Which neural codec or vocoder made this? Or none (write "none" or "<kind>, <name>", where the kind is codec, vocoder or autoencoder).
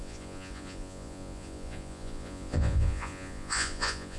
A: vocoder, Vocos